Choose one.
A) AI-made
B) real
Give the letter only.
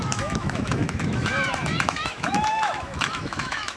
A